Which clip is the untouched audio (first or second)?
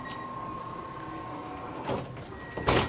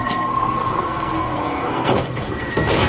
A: first